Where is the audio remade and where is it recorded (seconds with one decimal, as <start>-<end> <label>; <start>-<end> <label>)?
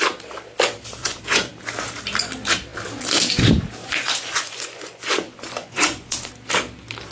0.0-1.0 recorded; 1.0-1.5 remade; 1.5-3.8 recorded; 3.8-6.3 remade; 6.3-7.1 recorded